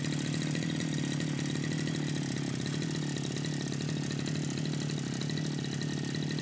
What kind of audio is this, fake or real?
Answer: real